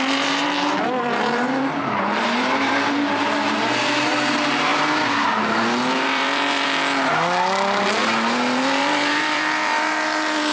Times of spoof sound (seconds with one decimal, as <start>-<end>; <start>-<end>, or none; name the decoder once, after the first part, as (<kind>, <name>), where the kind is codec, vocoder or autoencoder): 0.0-4.7 (vocoder, BigVGAN v2); 5.9-6.8; 8.6-10.5